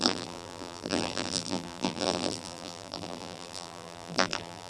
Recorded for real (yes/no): no